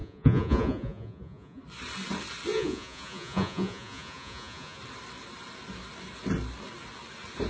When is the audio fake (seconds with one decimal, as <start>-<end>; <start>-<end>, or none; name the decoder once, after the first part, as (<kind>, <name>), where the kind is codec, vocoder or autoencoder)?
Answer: 0.0-1.6 (vocoder, Vocos); 2.5-4.8